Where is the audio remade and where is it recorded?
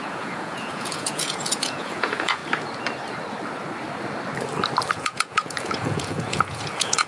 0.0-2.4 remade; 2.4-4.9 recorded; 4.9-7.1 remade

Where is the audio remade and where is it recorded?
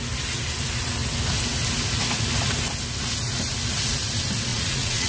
0.0-4.5 recorded; 4.5-5.1 remade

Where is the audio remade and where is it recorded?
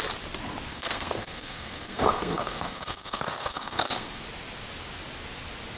0.0-0.7 recorded; 0.7-4.2 remade; 4.2-5.8 recorded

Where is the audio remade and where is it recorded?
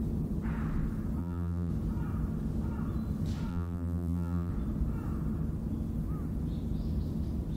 0.0-1.2 recorded; 1.2-1.7 remade; 1.7-3.5 recorded; 3.5-4.5 remade; 4.5-7.6 recorded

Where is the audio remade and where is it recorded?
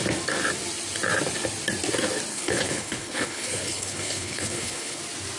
0.0-2.3 recorded; 2.3-5.0 remade; 5.0-5.4 recorded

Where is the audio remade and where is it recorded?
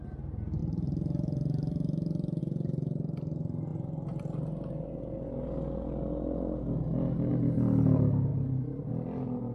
0.0-0.6 recorded; 0.6-2.4 remade; 2.4-8.3 recorded; 8.3-8.9 remade; 8.9-9.5 recorded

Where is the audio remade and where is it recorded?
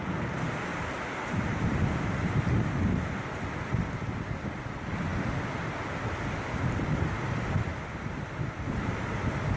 0.0-0.7 recorded; 0.7-2.4 remade; 2.4-7.7 recorded; 7.7-9.1 remade; 9.1-9.6 recorded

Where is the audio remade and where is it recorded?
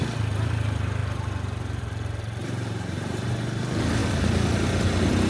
0.0-2.4 recorded; 2.4-3.6 remade; 3.6-5.3 recorded